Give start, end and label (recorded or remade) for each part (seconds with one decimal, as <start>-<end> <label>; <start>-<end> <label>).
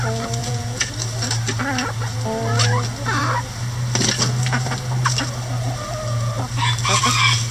0.0-0.4 recorded; 0.4-0.9 remade; 0.9-7.5 recorded